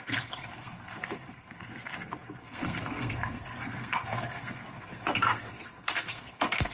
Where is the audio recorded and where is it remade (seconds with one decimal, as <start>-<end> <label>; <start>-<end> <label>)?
0.0-6.7 remade

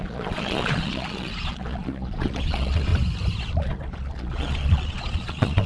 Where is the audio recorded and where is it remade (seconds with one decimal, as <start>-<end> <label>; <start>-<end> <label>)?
0.0-2.9 remade; 2.9-3.6 recorded; 3.6-5.7 remade

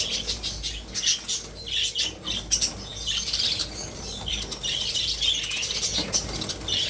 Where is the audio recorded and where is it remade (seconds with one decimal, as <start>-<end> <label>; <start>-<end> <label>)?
0.0-6.9 recorded

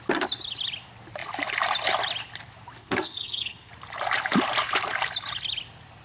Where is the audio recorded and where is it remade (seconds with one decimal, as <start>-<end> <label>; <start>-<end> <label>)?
0.0-2.8 recorded; 2.8-3.7 remade; 3.7-6.0 recorded

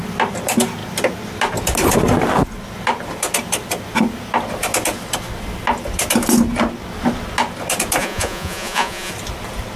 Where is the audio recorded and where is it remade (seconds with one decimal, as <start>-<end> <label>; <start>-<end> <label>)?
0.0-8.0 recorded; 8.0-9.1 remade; 9.1-9.8 recorded